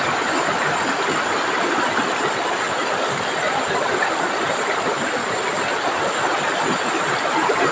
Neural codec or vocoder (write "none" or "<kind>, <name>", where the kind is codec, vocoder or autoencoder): none